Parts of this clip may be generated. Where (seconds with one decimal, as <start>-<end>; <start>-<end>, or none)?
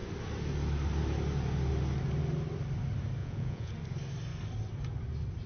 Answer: 3.2-3.7